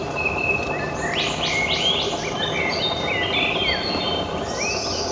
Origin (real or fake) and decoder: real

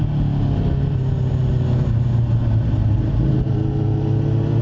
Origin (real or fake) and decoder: real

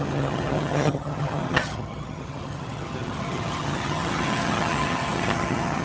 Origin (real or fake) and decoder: fake, vocoder, HiFi-GAN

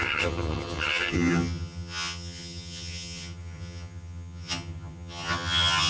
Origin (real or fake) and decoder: fake, vocoder, HiFi-GAN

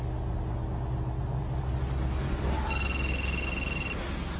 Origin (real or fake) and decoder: real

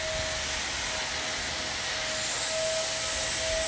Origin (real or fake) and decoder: real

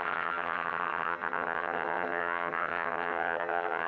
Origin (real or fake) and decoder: fake, vocoder, HiFi-GAN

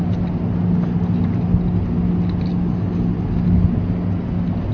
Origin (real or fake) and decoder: real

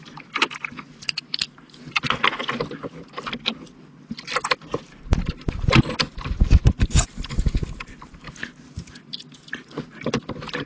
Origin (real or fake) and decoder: real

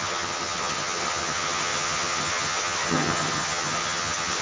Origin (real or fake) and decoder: fake, vocoder, HiFi-GAN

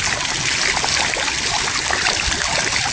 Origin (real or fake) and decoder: real